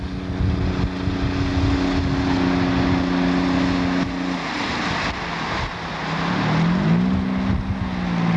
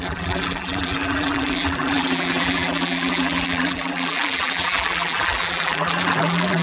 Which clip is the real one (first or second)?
first